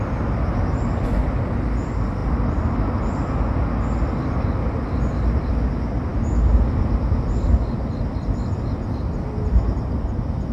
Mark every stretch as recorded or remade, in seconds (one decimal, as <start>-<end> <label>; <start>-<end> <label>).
0.0-10.5 recorded